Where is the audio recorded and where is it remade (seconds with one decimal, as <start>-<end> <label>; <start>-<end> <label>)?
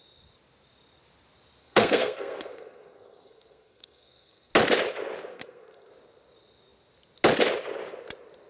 0.0-1.6 recorded; 1.6-4.5 remade; 4.5-5.3 recorded; 5.3-5.9 remade; 5.9-8.5 recorded